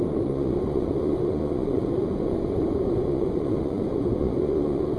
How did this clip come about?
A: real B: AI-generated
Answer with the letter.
B